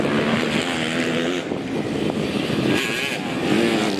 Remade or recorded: recorded